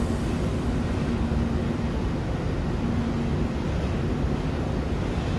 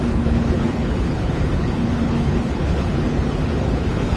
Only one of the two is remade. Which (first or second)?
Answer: second